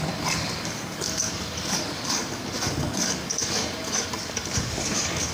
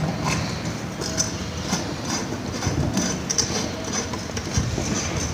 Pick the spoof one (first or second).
first